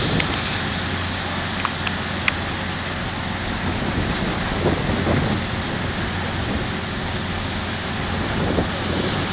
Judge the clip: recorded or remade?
recorded